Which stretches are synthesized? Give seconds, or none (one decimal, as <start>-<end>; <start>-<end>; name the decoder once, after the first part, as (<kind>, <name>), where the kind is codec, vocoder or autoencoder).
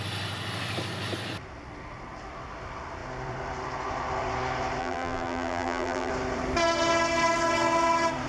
4.8-6.1 (vocoder, BigVGAN v2)